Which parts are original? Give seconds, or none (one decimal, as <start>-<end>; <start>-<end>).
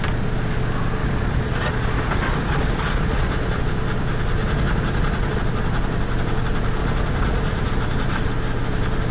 0.0-1.0; 3.6-4.4; 5.4-6.8; 7.7-9.1